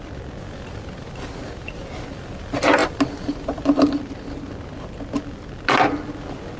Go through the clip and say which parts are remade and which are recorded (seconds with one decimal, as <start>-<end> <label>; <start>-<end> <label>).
0.0-6.6 recorded